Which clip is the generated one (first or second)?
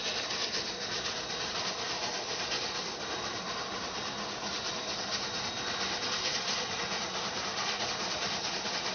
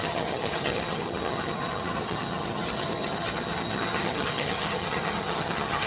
second